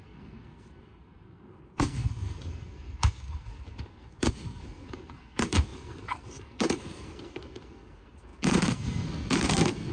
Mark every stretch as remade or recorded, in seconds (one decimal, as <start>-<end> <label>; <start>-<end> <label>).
0.0-9.9 remade